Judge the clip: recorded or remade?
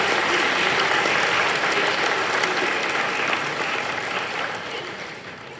recorded